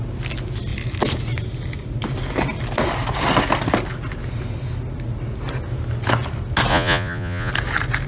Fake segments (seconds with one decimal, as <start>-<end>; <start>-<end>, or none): 6.7-7.5